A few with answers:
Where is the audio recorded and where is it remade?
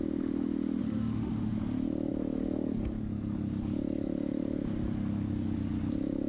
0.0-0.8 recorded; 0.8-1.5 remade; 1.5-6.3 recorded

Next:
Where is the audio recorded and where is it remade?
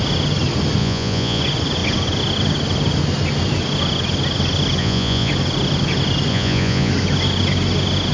0.0-0.8 recorded; 0.8-1.4 remade; 1.4-4.8 recorded; 4.8-5.3 remade; 5.3-6.3 recorded; 6.3-6.9 remade; 6.9-8.1 recorded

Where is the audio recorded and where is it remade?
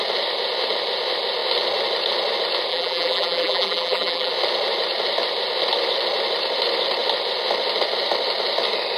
0.0-2.7 recorded; 2.7-4.3 remade; 4.3-9.0 recorded